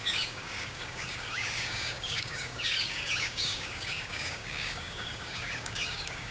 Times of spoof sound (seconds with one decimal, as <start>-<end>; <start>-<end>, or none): 0.0-6.3